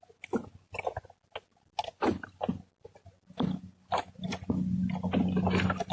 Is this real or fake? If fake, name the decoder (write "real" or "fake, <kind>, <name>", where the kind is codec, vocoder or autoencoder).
real